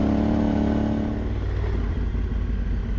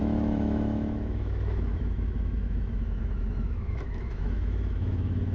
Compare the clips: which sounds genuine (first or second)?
first